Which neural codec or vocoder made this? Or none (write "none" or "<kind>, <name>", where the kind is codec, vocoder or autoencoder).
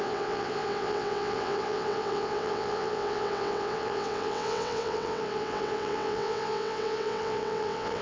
vocoder, WaveNeXt